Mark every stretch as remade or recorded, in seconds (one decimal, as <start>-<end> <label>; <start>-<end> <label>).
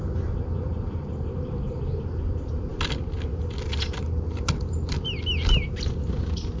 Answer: 0.0-6.6 recorded